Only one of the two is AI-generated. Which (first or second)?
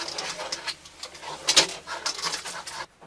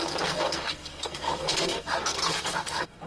second